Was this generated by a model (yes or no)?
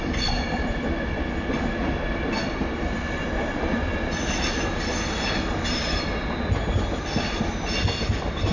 no